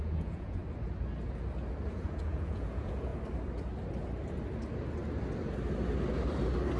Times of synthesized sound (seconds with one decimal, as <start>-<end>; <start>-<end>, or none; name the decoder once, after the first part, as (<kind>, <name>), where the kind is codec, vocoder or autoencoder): 0.0-0.6 (vocoder, Vocos); 1.9-3.1

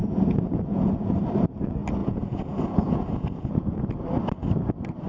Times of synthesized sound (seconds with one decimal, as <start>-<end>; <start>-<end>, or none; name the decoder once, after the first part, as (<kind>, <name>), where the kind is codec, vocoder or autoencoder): 0.0-1.2 (vocoder, Vocos); 2.0-3.9